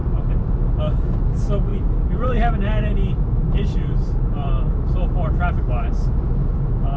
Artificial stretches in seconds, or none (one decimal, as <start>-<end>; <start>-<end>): 0.0-0.7; 1.7-5.7

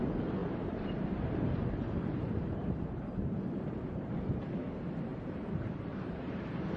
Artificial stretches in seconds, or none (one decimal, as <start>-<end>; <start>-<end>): 0.4-4.1; 5.1-6.8

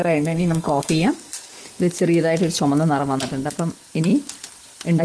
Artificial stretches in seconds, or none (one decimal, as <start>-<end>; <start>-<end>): 0.0-0.9